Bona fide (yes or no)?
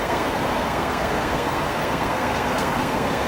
no